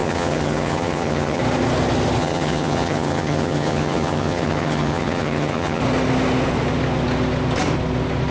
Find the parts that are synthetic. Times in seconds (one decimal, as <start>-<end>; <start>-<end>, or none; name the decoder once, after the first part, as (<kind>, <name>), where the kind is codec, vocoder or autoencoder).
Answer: 0.0-1.4 (vocoder, HiFi-GAN); 2.2-5.8